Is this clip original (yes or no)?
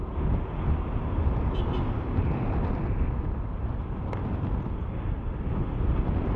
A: yes